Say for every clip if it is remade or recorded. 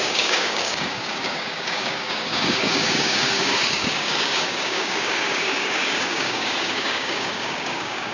remade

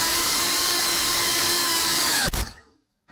remade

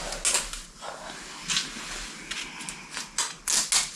recorded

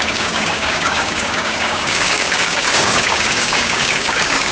remade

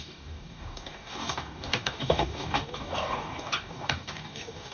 remade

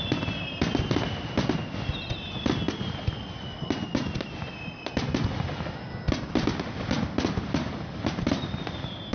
recorded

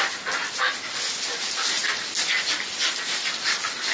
recorded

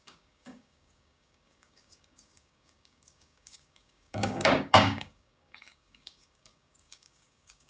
remade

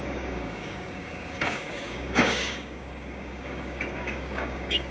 remade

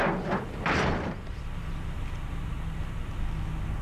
recorded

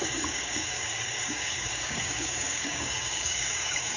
remade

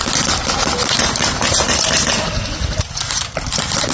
recorded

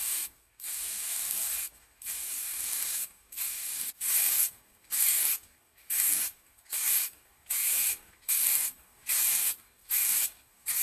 remade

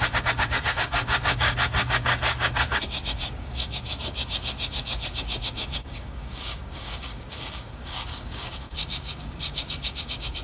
remade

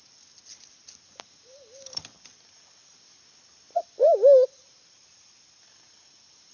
recorded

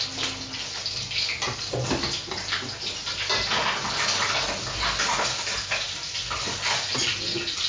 recorded